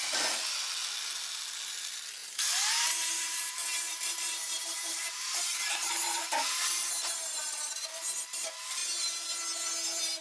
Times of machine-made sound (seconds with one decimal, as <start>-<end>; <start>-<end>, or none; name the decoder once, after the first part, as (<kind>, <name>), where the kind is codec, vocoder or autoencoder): 2.2-6.9 (vocoder, BigVGAN v2)